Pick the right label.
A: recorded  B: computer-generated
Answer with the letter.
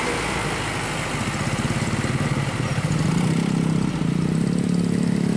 A